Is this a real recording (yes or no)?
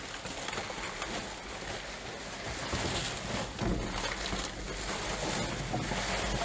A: yes